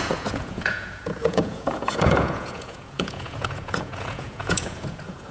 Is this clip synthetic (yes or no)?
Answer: yes